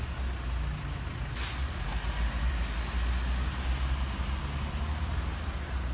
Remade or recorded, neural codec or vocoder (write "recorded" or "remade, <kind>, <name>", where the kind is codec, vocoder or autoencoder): recorded